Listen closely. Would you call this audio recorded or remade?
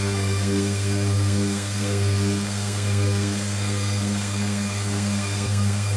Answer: remade